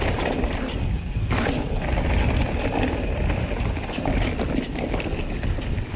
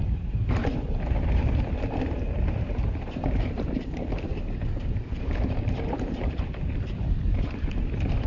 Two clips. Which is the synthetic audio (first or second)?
second